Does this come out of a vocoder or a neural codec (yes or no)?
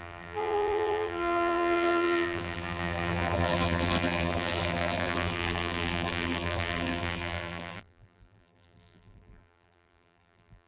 yes